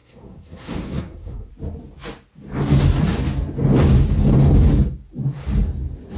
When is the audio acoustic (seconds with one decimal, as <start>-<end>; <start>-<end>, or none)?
1.5-6.2